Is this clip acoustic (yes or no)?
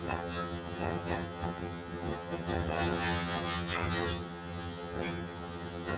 no